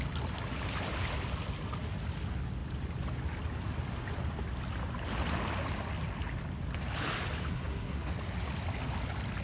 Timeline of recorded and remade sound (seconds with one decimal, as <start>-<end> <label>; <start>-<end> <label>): 0.0-7.5 recorded; 7.5-8.1 remade; 8.1-9.4 recorded

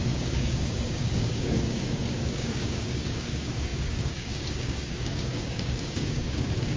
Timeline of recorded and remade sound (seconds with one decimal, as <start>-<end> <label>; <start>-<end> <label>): 0.0-6.8 remade

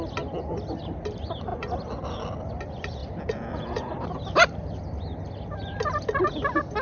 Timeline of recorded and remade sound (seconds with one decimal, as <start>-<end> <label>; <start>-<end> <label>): 0.0-1.5 recorded; 1.5-2.6 remade; 2.6-3.0 recorded; 3.0-4.2 remade; 4.2-6.8 recorded

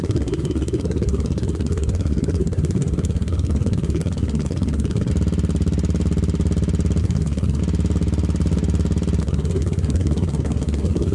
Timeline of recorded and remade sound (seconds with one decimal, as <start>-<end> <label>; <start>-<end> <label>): 0.0-5.1 remade; 5.1-7.0 recorded; 7.0-7.6 remade; 7.6-9.2 recorded; 9.2-11.1 remade